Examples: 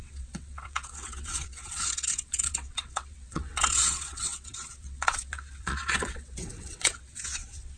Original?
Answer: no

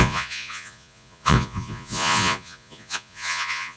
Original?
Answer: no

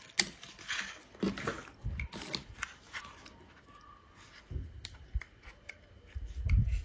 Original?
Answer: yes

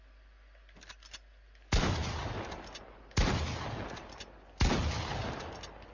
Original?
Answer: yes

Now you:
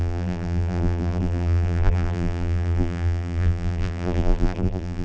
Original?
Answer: no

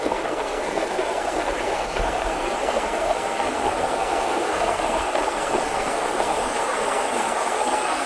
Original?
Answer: no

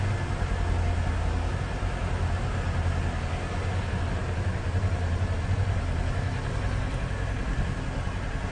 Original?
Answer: yes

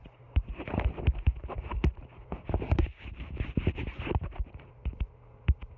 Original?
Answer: no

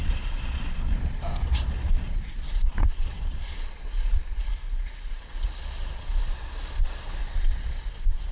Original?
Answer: no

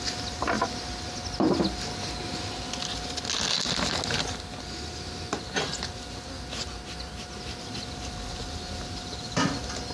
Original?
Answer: yes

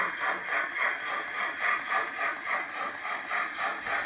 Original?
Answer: yes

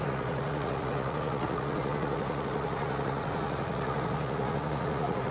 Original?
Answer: no